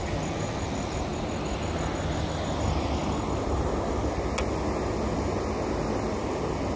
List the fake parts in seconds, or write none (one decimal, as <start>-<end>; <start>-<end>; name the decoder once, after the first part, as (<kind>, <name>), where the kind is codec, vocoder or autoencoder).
none